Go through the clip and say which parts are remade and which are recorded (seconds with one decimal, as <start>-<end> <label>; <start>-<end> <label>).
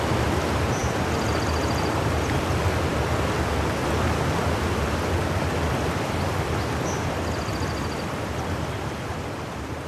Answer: 0.0-9.9 recorded